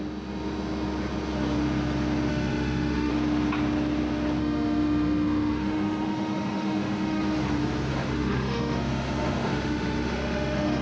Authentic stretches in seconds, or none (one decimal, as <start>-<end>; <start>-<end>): 0.0-2.3; 3.1-4.4; 7.2-7.9